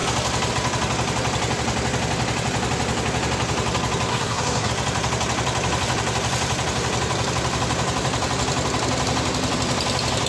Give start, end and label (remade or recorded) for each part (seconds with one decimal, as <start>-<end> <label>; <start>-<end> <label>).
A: 0.0-4.1 recorded; 4.1-4.7 remade; 4.7-10.3 recorded